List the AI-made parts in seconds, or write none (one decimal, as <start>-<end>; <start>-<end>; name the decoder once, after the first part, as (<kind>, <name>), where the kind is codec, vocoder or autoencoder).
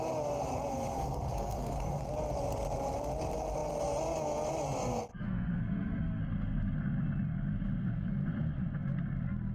0.7-2.0 (codec, SNAC); 5.1-6.2